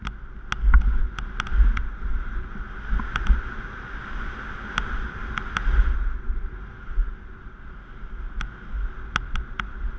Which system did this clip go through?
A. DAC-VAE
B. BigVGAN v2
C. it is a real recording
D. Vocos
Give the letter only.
C